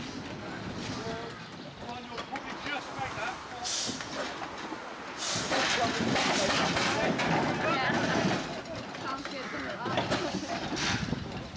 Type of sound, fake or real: real